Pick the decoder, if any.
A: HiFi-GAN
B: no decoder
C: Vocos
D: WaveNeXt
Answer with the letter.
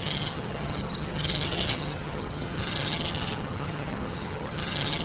A